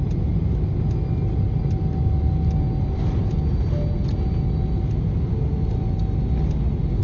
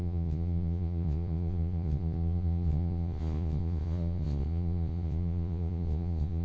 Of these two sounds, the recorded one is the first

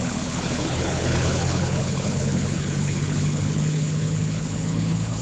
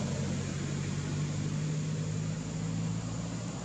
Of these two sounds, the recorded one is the second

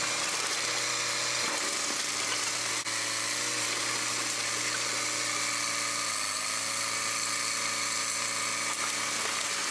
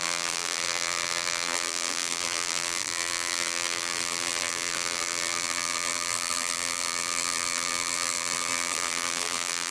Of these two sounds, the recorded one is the first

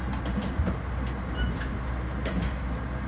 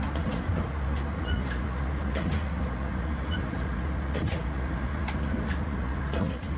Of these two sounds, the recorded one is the first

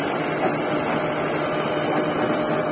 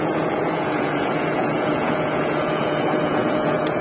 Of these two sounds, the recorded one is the first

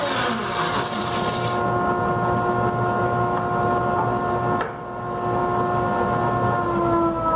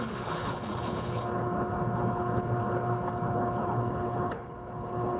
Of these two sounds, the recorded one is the first